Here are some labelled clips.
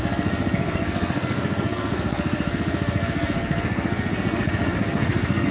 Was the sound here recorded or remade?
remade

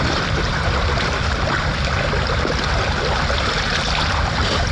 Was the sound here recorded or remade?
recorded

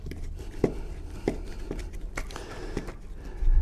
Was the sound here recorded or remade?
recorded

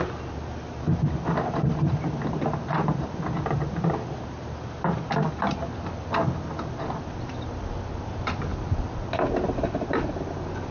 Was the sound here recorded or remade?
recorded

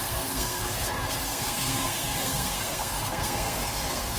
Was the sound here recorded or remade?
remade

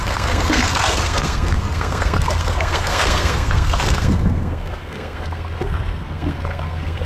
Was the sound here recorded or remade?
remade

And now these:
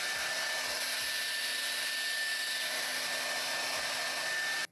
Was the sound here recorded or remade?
recorded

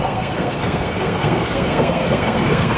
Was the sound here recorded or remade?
remade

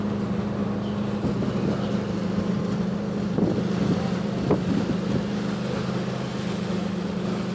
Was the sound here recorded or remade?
recorded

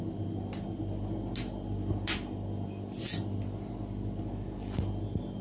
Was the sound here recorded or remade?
recorded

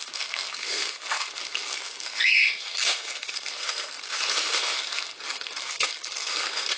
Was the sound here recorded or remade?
remade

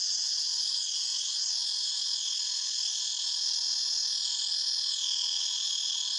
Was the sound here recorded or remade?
recorded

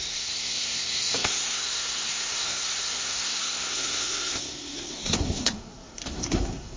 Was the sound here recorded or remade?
remade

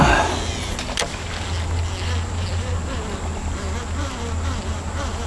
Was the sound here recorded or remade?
recorded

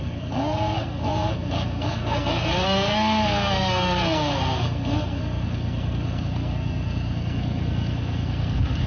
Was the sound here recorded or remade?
remade